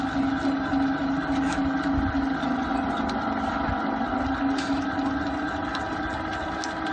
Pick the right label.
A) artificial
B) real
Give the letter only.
B